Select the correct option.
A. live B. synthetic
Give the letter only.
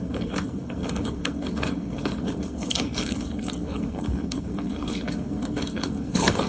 B